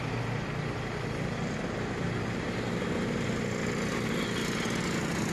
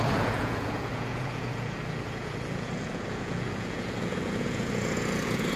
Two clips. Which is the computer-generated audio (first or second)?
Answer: second